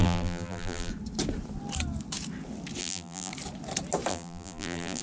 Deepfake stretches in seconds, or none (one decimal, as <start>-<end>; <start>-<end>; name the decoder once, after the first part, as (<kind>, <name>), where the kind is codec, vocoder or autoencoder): 0.0-0.9 (vocoder, BigVGAN v2); 2.8-3.3; 4.1-5.0

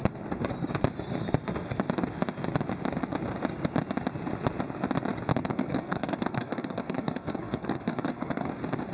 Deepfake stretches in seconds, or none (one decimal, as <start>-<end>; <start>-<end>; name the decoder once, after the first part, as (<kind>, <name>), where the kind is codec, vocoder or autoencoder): 5.3-8.5 (codec, SNAC)